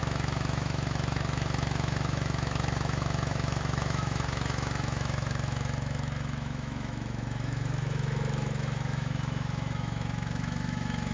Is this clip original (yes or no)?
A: no